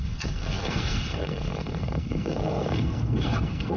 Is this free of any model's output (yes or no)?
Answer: no